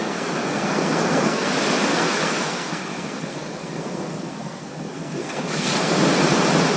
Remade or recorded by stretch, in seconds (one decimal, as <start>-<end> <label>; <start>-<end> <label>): 0.0-1.5 remade; 1.5-1.9 recorded; 1.9-6.0 remade; 6.0-6.8 recorded